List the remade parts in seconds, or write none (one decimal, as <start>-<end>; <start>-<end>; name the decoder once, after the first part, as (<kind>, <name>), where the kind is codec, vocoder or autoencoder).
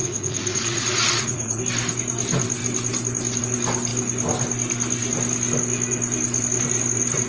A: 0.0-1.6 (vocoder, Vocos)